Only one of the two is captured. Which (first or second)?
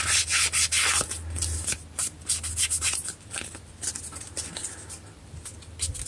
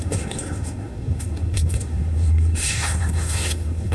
first